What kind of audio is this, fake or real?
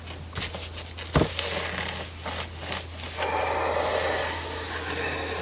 real